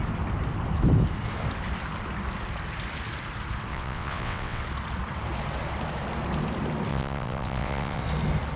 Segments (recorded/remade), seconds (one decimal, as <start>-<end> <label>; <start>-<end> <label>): 0.0-3.7 recorded; 3.7-4.6 remade; 4.6-6.9 recorded; 6.9-8.0 remade; 8.0-8.6 recorded